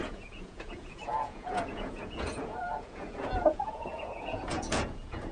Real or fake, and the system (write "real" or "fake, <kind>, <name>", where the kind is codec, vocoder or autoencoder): fake, vocoder, Vocos